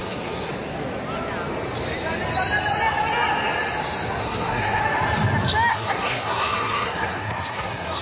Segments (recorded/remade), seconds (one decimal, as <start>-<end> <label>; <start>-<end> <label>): 0.0-0.5 remade; 0.5-4.2 recorded; 4.2-4.8 remade; 4.8-5.7 recorded; 5.7-8.0 remade